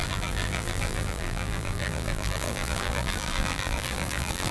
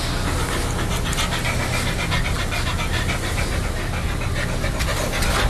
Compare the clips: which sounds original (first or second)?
second